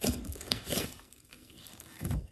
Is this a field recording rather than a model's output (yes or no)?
no